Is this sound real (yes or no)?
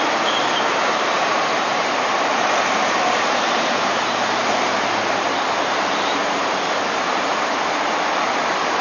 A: no